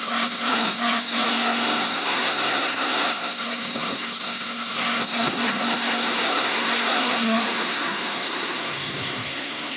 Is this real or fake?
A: fake